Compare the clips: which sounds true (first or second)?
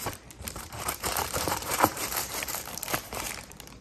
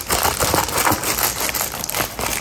second